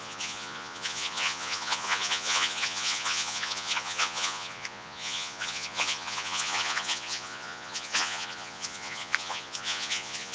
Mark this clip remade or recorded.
remade